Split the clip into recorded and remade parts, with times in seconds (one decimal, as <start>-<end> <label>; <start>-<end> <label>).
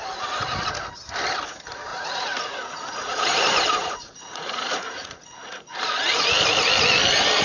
0.0-1.9 recorded; 1.9-3.2 remade; 3.2-3.8 recorded; 3.8-5.8 remade; 5.8-7.4 recorded